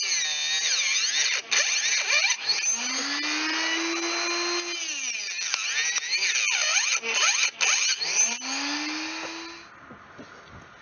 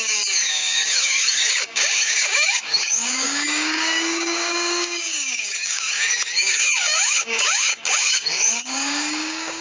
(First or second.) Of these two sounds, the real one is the first